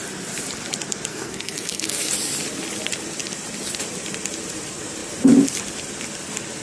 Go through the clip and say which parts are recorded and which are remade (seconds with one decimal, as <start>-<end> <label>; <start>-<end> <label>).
0.0-1.1 recorded; 1.1-2.1 remade; 2.1-6.6 recorded